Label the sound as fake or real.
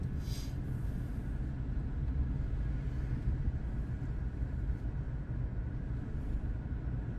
real